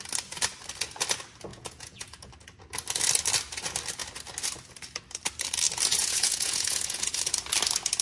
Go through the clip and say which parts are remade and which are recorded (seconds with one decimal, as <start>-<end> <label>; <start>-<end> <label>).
0.0-1.5 recorded; 1.5-2.3 remade; 2.3-5.9 recorded; 5.9-7.2 remade; 7.2-8.0 recorded